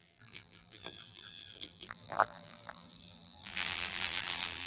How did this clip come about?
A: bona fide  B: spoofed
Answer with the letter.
B